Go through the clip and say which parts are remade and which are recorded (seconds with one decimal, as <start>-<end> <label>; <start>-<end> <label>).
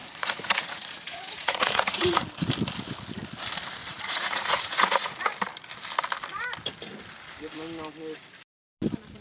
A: 0.0-2.2 remade; 2.2-3.8 recorded; 3.8-5.2 remade; 5.2-9.2 recorded